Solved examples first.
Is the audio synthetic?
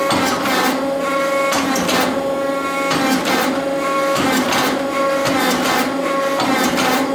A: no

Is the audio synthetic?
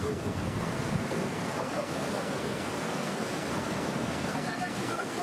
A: yes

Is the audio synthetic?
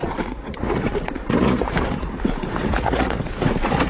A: yes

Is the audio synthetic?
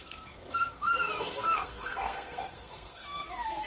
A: yes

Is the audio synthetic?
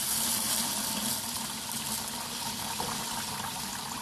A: no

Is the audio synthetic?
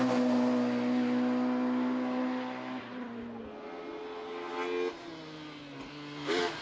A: no